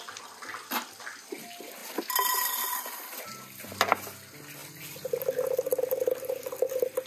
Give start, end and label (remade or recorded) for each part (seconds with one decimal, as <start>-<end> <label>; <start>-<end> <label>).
0.0-7.1 recorded